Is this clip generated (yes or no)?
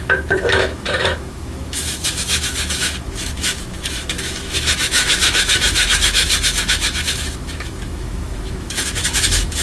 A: yes